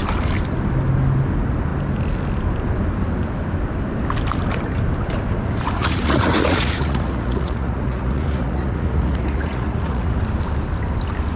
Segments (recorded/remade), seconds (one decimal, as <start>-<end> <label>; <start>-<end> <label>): 0.0-5.8 recorded; 5.8-10.2 remade; 10.2-11.4 recorded